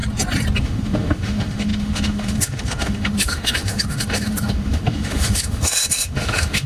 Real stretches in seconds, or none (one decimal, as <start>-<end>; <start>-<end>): 0.0-0.6